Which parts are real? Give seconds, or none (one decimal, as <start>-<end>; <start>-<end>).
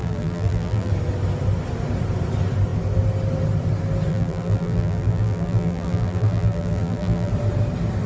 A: 0.9-4.1; 7.3-8.1